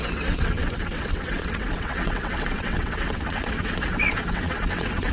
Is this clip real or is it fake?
fake